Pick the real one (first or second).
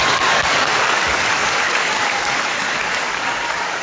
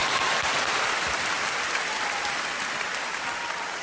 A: second